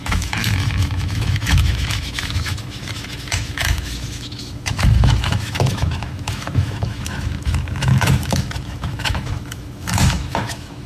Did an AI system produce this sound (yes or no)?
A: yes